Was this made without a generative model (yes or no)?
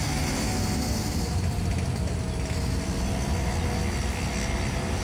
yes